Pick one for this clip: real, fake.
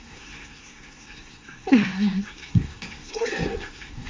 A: fake